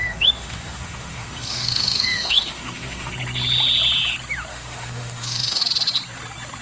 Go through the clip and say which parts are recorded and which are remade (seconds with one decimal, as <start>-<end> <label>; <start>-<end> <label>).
0.0-3.1 remade; 3.1-4.5 recorded; 4.5-5.6 remade; 5.6-6.6 recorded